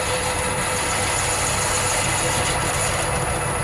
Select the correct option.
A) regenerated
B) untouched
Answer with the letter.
B